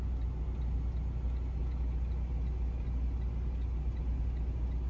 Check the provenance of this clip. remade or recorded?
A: recorded